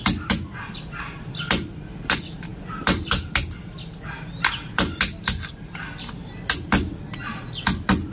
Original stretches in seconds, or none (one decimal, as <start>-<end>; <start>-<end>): 0.0-8.1